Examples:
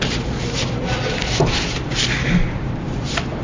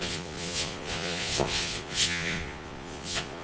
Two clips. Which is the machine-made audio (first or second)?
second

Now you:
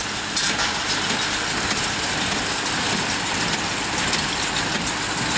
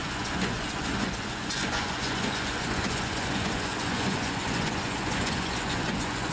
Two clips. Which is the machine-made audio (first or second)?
second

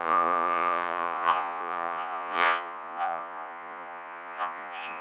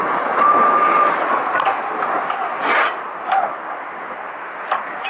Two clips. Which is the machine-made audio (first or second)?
first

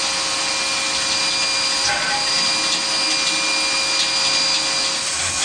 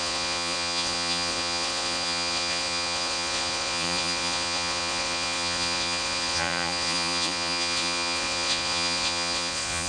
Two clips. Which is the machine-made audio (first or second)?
second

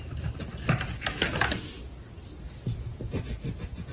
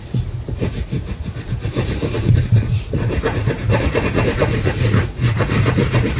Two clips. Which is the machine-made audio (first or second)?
second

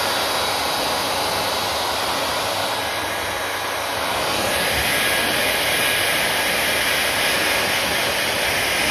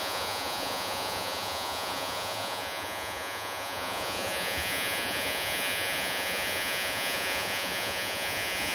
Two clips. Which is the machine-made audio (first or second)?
second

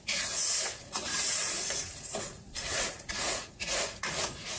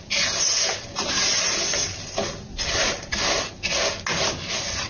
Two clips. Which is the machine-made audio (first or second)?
first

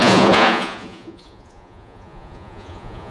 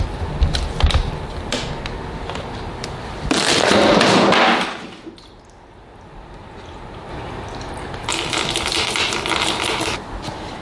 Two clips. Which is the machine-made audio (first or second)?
first